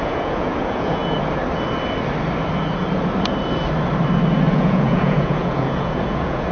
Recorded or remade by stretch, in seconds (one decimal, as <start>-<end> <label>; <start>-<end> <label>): 0.0-1.0 remade; 1.0-4.5 recorded; 4.5-6.5 remade